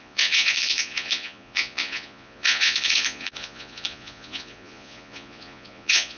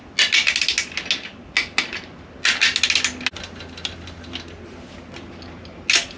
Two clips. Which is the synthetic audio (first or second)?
first